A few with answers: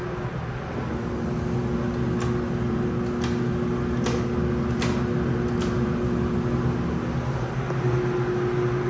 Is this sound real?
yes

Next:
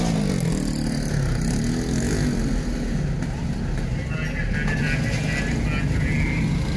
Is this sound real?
yes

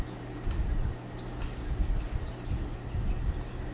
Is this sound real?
yes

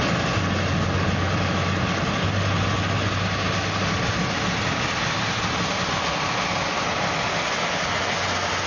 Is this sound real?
yes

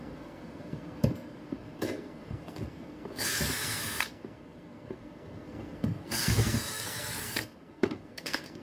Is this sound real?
no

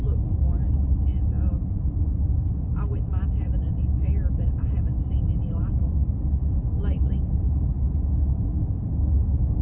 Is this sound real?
yes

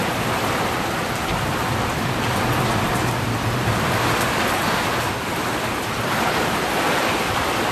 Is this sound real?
yes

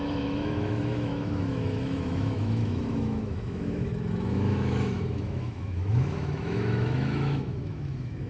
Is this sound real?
no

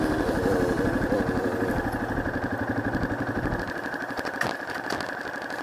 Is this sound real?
yes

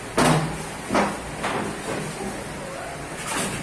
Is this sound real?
yes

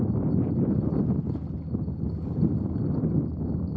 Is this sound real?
yes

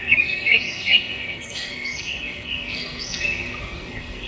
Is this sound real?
no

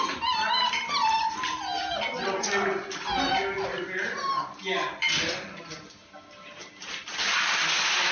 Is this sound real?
yes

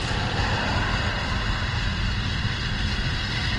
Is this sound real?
no